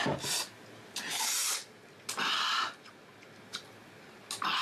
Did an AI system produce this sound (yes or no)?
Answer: no